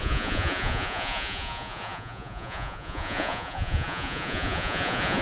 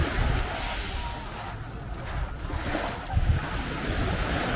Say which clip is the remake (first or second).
first